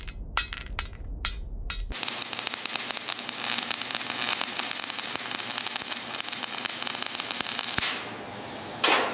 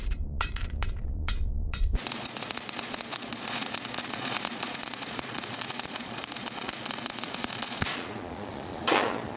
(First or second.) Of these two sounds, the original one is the first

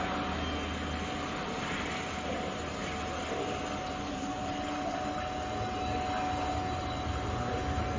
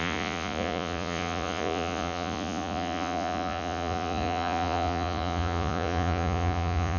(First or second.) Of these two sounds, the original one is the first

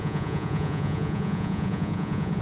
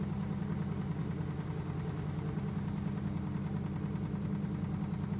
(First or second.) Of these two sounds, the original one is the second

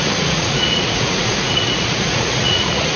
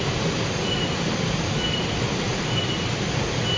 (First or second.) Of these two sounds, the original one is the second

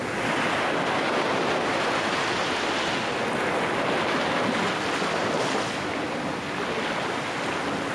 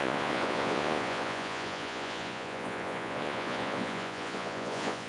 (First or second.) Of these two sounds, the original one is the first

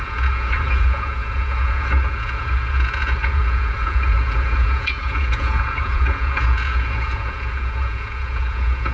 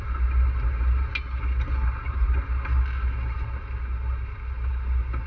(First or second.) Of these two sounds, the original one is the second